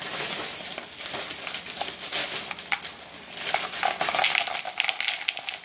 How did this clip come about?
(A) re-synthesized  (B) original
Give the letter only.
B